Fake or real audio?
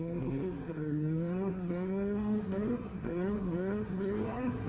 fake